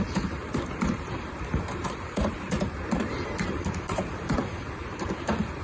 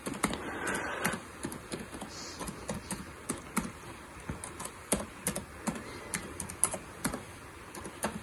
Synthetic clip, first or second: first